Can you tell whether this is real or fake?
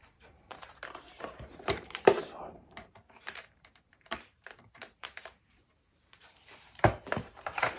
fake